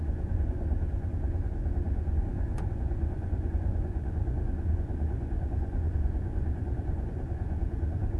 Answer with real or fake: fake